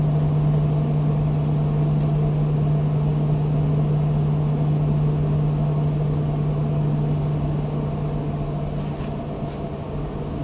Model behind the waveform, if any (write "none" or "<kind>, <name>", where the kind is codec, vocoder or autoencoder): none